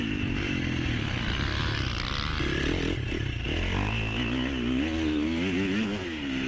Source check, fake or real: real